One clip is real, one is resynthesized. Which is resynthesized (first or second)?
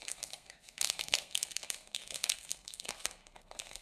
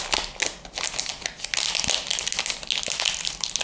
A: first